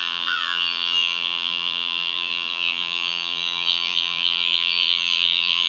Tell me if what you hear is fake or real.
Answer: fake